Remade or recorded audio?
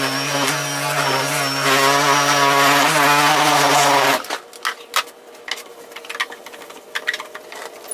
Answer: recorded